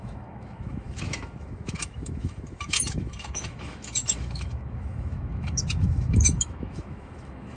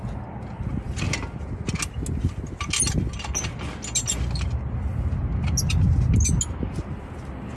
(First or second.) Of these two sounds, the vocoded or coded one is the first